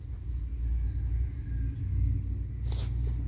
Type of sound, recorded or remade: recorded